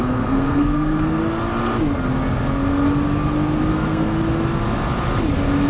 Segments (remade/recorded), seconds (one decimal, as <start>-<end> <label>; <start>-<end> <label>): 0.0-1.2 remade; 1.2-3.7 recorded; 3.7-4.2 remade; 4.2-5.7 recorded